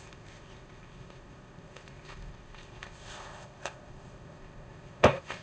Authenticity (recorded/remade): remade